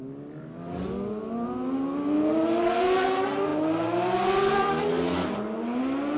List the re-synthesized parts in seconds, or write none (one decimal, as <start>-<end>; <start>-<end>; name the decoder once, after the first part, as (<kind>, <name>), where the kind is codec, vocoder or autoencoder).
none